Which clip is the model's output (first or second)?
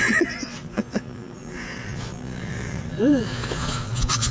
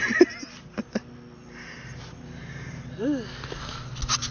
first